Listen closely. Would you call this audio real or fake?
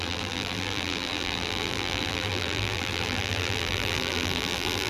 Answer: fake